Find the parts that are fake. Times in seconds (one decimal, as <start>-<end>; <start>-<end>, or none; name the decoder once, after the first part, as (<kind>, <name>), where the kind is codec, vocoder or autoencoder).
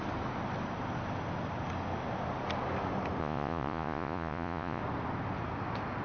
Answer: 3.2-4.8 (vocoder, Vocos)